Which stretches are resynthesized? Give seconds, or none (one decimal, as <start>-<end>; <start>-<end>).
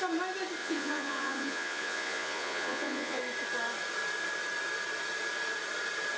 0.6-3.2